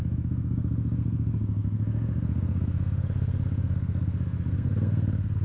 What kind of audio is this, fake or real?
fake